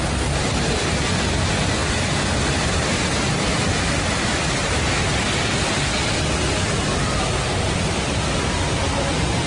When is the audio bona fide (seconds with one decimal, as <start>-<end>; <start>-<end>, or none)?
0.0-9.5